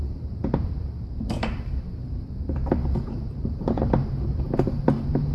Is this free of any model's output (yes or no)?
no